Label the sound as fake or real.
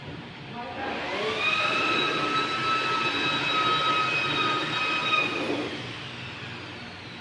real